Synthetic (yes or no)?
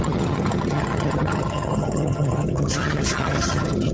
yes